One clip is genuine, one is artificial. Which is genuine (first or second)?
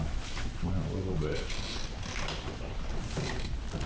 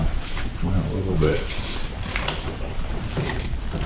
first